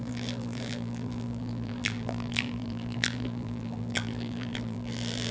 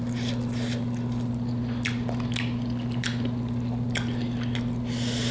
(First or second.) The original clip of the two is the second